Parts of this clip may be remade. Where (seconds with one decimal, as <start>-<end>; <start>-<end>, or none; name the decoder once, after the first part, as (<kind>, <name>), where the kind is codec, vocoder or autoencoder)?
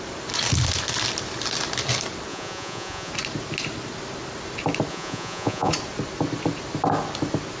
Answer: 2.3-3.1 (vocoder, Vocos); 4.9-5.7